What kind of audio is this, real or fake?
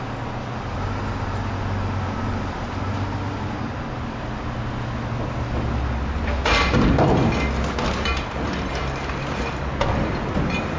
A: real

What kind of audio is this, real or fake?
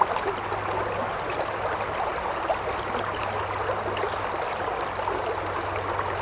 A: real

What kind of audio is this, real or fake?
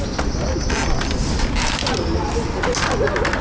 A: real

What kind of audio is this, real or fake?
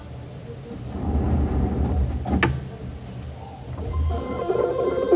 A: real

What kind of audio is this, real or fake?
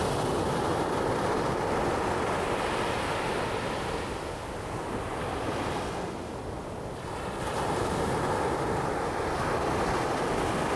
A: real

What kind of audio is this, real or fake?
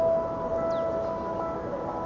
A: real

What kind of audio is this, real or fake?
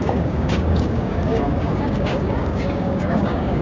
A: fake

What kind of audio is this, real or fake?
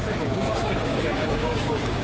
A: fake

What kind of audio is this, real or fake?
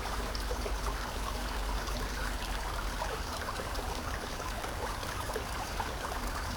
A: fake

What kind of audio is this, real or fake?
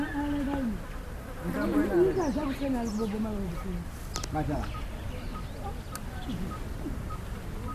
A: real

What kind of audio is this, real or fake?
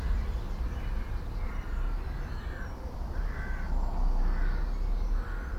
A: real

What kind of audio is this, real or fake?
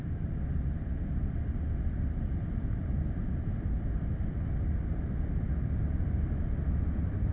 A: real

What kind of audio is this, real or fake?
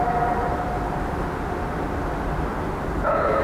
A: real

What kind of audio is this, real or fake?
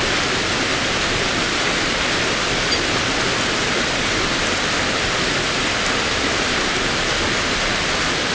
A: real